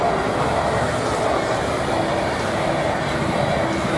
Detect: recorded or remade recorded